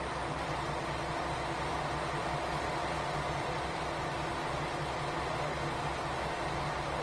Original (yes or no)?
yes